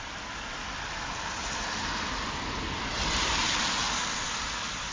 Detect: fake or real real